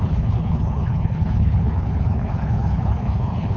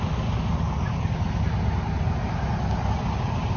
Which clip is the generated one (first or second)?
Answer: first